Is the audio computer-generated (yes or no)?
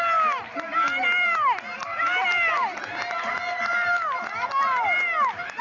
no